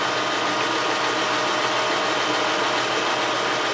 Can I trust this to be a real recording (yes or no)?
yes